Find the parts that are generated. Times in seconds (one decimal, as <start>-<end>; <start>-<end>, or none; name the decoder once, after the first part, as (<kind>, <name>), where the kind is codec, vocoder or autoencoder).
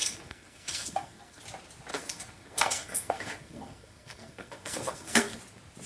0.0-1.4 (codec, SNAC); 1.9-5.4